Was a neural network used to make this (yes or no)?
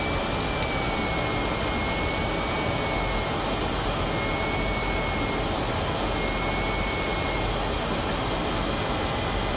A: no